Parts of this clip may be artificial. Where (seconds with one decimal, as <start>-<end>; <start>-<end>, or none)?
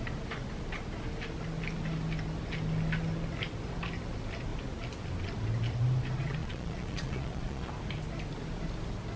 6.4-7.7